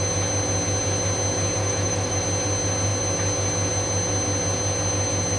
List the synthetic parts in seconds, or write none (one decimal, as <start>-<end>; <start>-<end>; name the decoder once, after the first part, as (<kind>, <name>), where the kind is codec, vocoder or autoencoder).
1.6-2.2 (autoencoder, DAC-VAE)

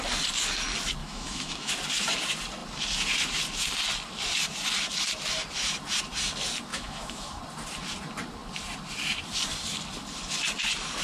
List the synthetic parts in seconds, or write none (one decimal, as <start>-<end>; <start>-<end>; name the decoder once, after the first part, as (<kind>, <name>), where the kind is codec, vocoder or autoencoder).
1.0-1.7 (autoencoder, DAC-VAE); 6.7-7.4